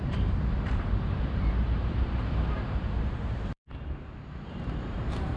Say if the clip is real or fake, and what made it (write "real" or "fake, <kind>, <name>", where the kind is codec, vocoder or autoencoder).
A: fake, vocoder, BigVGAN v2